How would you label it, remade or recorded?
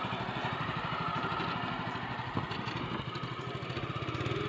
recorded